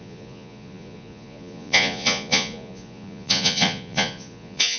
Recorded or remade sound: remade